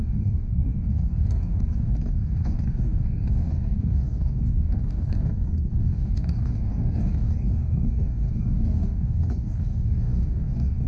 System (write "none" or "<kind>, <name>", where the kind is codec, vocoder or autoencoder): codec, DAC